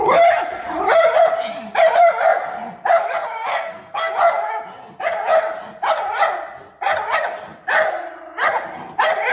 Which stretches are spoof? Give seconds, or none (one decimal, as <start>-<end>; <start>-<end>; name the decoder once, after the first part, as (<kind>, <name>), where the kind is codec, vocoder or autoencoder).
3.5-4.1 (codec, SNAC)